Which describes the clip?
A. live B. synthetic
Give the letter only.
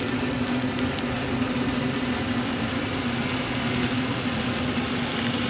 A